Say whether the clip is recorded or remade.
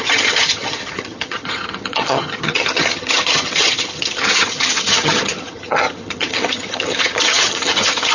remade